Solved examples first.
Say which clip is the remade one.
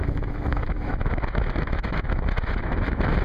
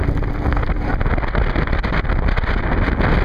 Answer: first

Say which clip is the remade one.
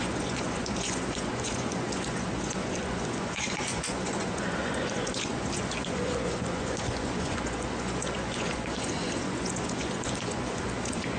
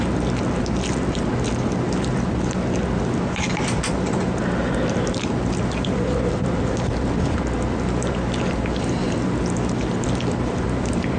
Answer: first